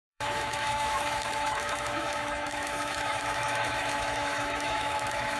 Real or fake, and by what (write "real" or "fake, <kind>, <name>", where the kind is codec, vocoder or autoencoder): fake, autoencoder, DAC-VAE